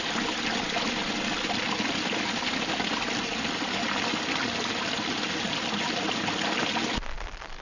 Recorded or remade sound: recorded